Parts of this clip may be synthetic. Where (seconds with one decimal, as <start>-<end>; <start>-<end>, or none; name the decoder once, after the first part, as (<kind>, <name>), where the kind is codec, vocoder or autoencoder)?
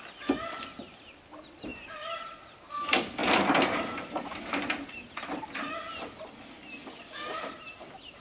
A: 1.7-2.2 (vocoder, BigVGAN v2); 3.2-5.7